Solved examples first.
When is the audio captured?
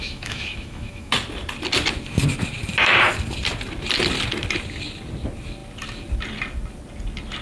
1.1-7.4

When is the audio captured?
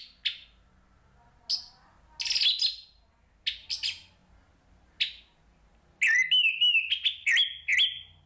0.0-8.3